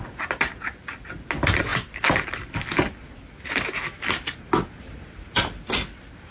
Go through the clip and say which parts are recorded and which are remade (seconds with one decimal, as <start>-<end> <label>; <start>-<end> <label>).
0.0-6.3 recorded